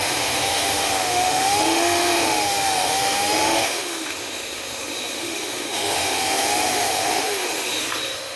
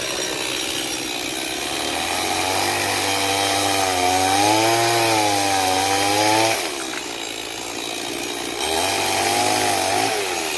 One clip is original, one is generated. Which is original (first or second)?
second